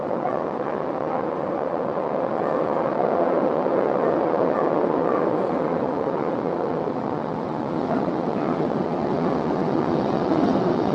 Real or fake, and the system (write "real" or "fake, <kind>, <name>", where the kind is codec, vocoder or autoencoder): fake, vocoder, WaveNeXt